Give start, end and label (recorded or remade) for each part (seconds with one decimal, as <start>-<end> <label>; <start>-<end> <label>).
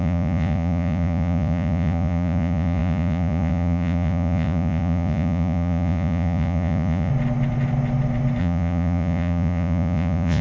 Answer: 0.0-7.1 remade; 7.1-8.4 recorded; 8.4-10.4 remade